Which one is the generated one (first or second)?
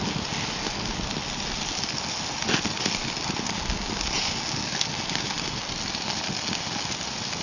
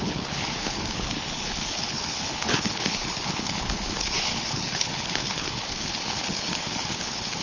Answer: second